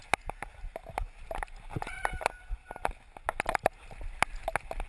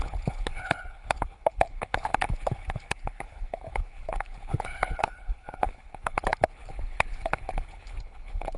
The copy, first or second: second